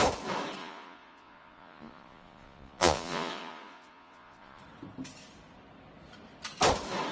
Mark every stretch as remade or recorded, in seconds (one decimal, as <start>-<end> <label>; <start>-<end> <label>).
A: 0.0-0.6 recorded; 0.6-4.6 remade; 4.6-7.1 recorded